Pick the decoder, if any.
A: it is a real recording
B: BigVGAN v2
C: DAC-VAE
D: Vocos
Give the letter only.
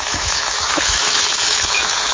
C